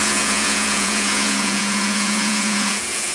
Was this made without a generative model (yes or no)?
no